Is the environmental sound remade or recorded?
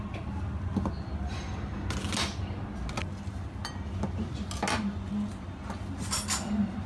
recorded